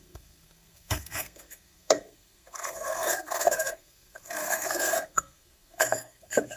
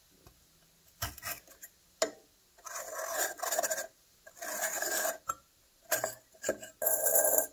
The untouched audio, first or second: second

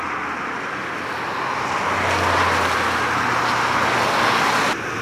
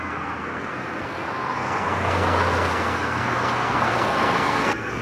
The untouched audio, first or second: first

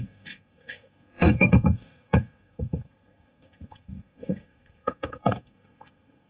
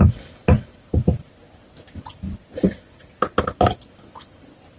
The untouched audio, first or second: second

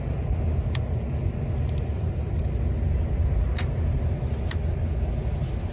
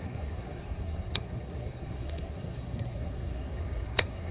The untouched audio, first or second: first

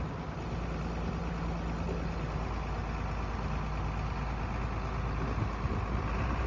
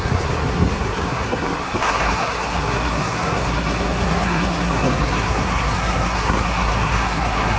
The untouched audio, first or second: first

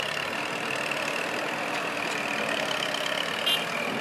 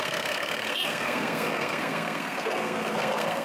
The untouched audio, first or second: first